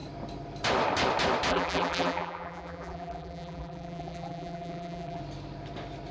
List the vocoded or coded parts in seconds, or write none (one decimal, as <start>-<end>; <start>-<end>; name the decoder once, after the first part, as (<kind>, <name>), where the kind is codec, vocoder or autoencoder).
1.5-5.2 (vocoder, BigVGAN v2)